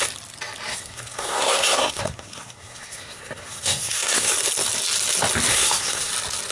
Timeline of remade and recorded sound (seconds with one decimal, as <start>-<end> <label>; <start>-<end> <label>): 0.0-0.7 recorded; 0.7-4.3 remade; 4.3-5.5 recorded; 5.5-6.1 remade; 6.1-6.5 recorded